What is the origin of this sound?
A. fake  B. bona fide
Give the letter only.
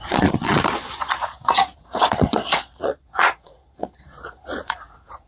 A